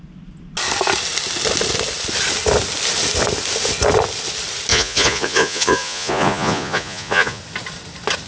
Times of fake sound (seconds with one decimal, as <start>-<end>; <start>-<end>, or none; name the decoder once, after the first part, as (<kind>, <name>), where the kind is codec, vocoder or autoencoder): 4.7-7.4 (vocoder, Vocos)